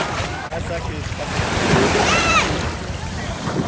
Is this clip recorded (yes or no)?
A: yes